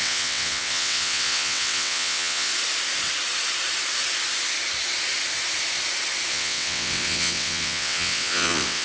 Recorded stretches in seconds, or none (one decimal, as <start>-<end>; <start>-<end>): 2.5-6.3